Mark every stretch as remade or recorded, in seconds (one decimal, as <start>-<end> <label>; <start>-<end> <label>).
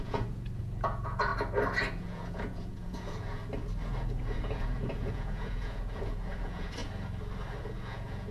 0.0-1.3 remade; 1.3-1.9 recorded; 1.9-3.4 remade; 3.4-4.1 recorded; 4.1-6.8 remade; 6.8-7.6 recorded; 7.6-8.3 remade